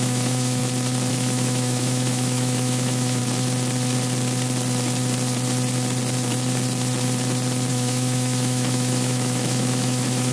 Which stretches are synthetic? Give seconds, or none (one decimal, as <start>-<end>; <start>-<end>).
0.0-0.6; 1.1-3.2; 7.7-10.3